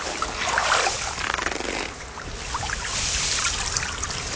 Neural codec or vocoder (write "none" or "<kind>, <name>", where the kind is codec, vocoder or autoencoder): none